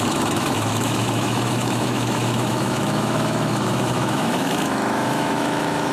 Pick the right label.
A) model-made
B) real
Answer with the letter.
A